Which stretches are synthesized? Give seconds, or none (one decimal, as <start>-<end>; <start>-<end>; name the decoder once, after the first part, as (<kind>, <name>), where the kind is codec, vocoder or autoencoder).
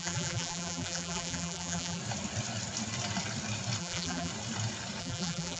0.0-2.0 (vocoder, BigVGAN v2); 3.8-4.3; 5.0-5.6